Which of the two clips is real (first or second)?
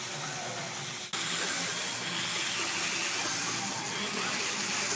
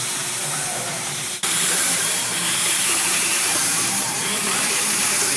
first